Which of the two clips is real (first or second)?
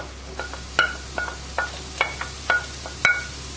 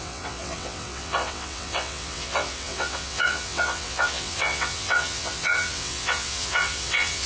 first